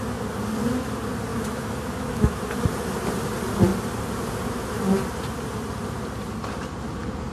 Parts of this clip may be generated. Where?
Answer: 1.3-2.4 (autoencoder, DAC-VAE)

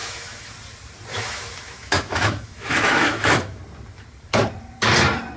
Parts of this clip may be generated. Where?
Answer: 0.0-0.5 (autoencoder, DAC-VAE); 1.1-3.6

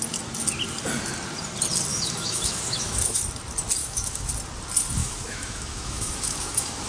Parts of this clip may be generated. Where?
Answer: 1.9-3.2 (autoencoder, DAC-VAE); 3.8-4.3; 5.0-6.9

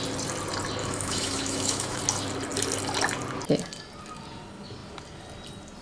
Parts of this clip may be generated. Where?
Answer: 0.8-2.0 (autoencoder, DAC-VAE)